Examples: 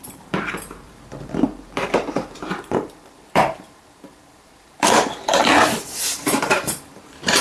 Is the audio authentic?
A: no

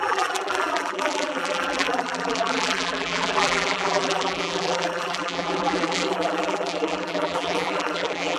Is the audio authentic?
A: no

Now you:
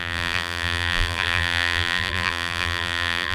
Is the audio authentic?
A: no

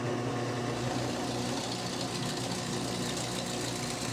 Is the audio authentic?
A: yes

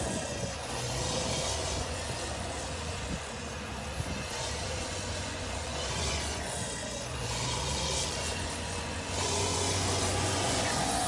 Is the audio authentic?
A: no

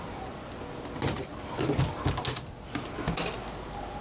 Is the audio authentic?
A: yes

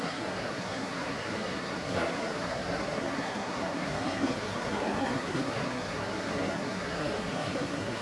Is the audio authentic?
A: no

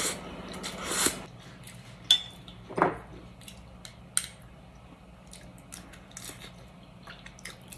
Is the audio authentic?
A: yes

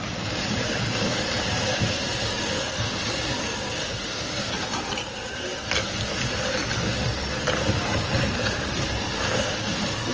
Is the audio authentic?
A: yes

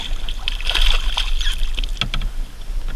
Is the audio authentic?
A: yes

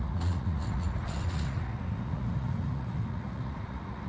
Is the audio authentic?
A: no